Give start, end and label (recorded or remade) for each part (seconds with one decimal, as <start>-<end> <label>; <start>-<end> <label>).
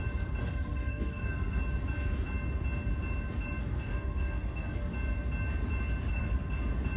0.0-0.4 recorded; 0.4-1.6 remade; 1.6-3.6 recorded; 3.6-4.9 remade; 4.9-6.1 recorded; 6.1-6.6 remade; 6.6-7.0 recorded